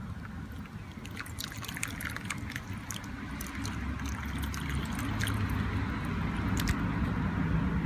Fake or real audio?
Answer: real